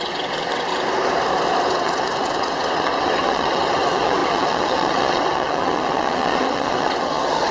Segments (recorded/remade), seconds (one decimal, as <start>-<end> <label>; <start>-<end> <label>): 0.0-0.7 remade; 0.7-1.6 recorded; 1.6-7.5 remade